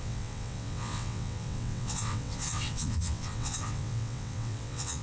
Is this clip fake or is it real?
fake